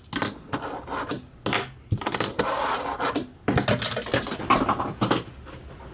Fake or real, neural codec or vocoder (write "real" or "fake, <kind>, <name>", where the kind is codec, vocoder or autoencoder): real